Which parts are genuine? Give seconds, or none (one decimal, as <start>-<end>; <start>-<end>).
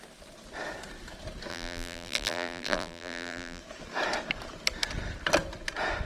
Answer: 0.0-1.5; 3.6-6.0